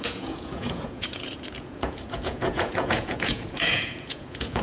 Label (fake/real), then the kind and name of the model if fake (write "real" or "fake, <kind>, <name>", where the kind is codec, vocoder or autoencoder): fake, vocoder, Vocos